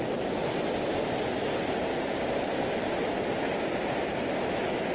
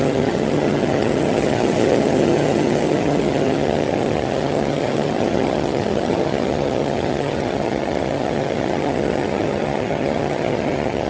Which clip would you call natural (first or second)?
first